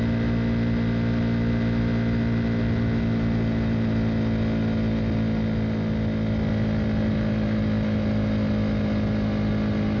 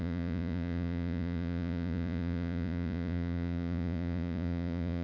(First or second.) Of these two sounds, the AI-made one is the second